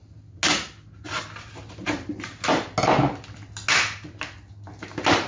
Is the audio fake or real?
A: real